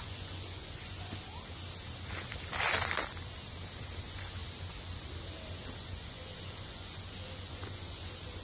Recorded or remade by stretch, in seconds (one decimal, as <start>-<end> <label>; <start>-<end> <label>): 0.0-1.3 remade; 1.3-4.0 recorded; 4.0-4.4 remade; 4.4-5.8 recorded; 5.8-8.4 remade